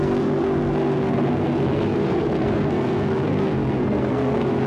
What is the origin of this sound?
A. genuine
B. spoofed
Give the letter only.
B